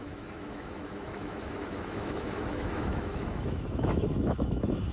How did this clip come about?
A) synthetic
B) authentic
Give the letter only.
A